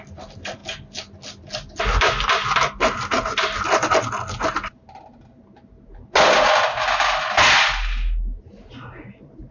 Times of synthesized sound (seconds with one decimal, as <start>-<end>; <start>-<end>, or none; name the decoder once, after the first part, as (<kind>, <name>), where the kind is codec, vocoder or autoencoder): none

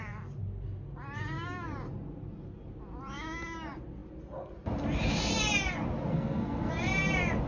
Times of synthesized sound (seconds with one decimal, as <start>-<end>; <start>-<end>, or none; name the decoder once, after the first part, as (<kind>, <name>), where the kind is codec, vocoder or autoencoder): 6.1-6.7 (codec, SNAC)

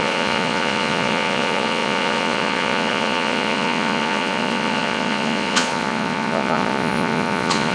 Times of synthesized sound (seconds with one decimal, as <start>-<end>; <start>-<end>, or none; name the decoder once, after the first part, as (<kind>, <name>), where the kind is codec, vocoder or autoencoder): 0.0-7.7 (vocoder, Vocos)

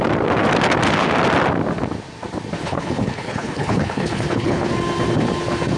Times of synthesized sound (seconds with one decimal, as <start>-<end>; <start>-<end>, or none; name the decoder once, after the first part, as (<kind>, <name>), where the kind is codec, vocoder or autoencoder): 2.6-4.7 (codec, HILCodec)